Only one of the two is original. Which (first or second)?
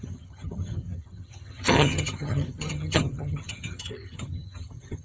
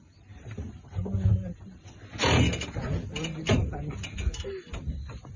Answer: second